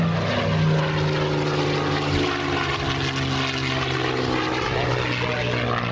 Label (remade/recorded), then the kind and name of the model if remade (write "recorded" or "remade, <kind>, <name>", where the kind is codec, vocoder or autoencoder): recorded